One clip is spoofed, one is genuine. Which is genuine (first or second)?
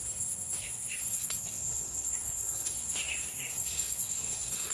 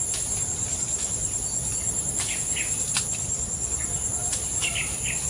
second